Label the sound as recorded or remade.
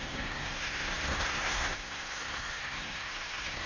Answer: remade